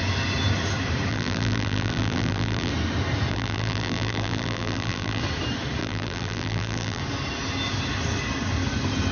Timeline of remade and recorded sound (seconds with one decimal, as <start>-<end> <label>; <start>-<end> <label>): 0.0-1.1 recorded; 1.1-2.7 remade; 2.7-3.3 recorded; 3.3-5.2 remade; 5.2-5.8 recorded; 5.8-7.0 remade; 7.0-9.1 recorded